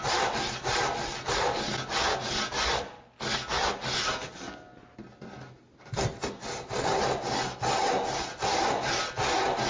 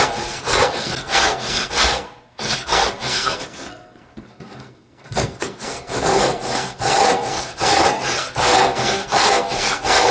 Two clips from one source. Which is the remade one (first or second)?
second